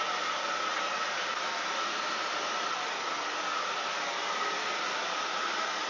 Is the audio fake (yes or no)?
no